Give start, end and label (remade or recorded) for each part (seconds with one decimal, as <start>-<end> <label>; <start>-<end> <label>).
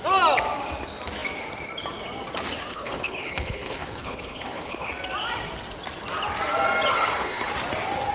0.0-2.7 recorded; 2.7-4.9 remade; 4.9-6.9 recorded; 6.9-7.5 remade; 7.5-8.1 recorded